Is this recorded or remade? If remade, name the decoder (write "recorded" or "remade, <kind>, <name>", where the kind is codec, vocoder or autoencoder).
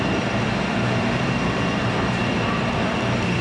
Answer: remade, vocoder, BigVGAN v2